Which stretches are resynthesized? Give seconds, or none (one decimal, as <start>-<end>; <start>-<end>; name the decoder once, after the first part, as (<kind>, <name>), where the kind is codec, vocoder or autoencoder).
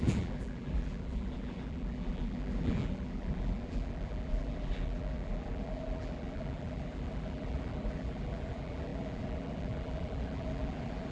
0.0-11.1 (vocoder, BigVGAN v2)